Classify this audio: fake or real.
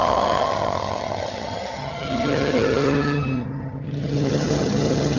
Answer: fake